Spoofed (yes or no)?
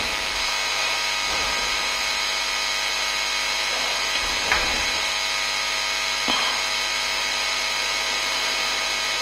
no